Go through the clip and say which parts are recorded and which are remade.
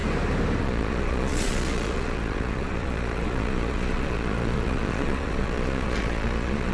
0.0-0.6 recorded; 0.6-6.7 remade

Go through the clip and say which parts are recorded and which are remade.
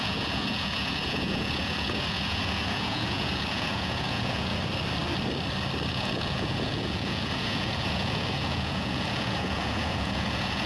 0.0-4.5 remade; 4.5-5.9 recorded; 5.9-10.7 remade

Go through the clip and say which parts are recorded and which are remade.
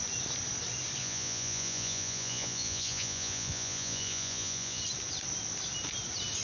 0.0-1.0 recorded; 1.0-4.8 remade; 4.8-6.4 recorded